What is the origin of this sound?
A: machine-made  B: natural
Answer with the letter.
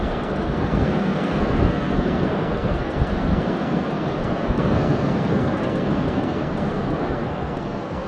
A